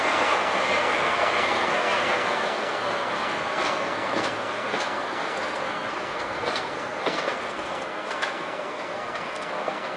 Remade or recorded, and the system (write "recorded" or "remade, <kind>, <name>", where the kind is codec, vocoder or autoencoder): remade, codec, SNAC